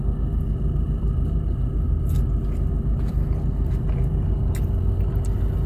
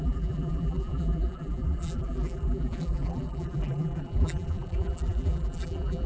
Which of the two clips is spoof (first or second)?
second